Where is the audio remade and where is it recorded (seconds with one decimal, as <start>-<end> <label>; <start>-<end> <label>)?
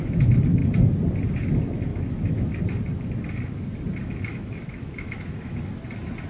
0.0-1.9 recorded; 1.9-2.6 remade; 2.6-4.0 recorded; 4.0-5.7 remade; 5.7-6.3 recorded